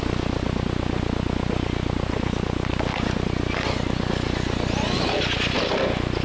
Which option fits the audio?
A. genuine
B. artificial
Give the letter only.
A